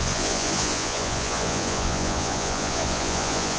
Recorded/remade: remade